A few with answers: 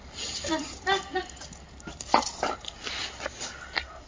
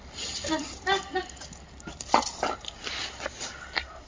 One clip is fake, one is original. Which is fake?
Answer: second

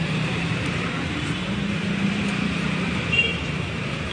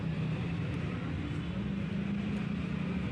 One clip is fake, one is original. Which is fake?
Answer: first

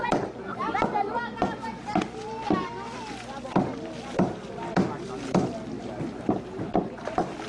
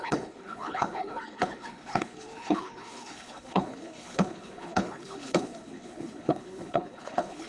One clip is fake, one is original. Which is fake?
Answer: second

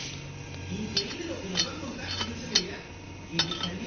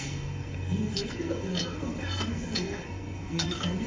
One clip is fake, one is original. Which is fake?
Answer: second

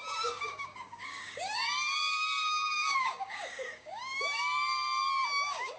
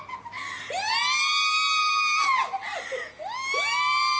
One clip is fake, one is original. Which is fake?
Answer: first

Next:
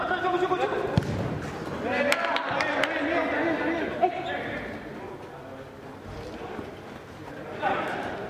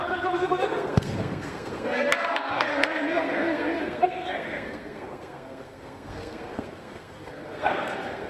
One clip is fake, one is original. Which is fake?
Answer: second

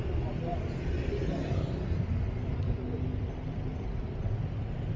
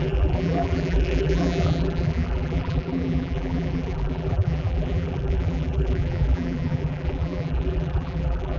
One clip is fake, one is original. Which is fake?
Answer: second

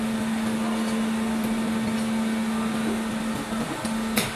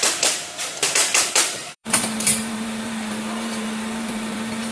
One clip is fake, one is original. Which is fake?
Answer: second